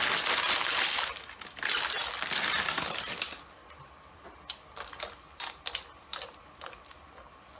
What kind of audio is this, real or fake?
real